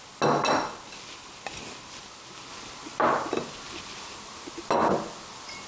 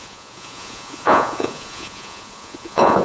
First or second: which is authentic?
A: first